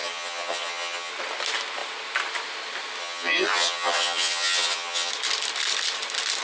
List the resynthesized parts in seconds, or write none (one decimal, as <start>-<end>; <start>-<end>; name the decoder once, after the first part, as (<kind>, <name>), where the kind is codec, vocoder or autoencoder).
0.0-1.1 (vocoder, HiFi-GAN); 3.0-5.1